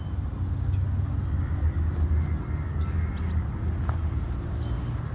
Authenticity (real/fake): real